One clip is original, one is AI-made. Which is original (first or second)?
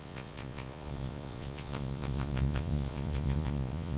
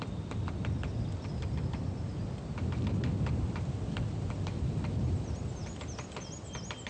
second